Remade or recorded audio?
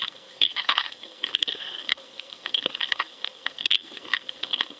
remade